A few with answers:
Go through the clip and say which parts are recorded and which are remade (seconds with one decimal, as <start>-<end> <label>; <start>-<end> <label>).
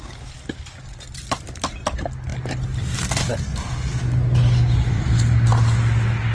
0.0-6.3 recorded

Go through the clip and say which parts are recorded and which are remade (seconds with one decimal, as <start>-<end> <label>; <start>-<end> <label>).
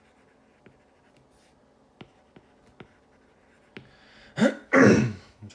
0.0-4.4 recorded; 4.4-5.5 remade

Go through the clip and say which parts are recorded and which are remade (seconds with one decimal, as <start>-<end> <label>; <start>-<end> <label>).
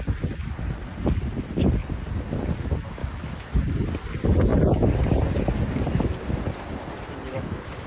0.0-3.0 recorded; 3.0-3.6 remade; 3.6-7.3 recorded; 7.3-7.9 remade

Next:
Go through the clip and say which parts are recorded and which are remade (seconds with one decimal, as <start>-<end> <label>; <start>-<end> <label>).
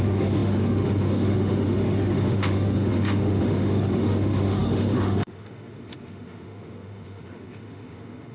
0.0-8.3 remade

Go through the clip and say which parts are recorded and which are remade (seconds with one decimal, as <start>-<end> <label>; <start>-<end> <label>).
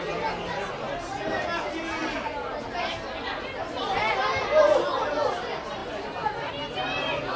0.0-7.4 recorded